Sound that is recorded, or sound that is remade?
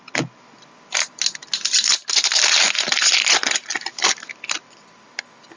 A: recorded